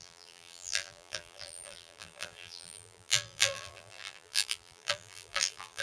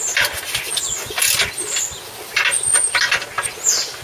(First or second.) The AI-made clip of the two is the first